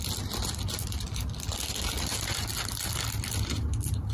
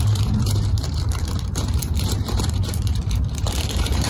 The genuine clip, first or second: first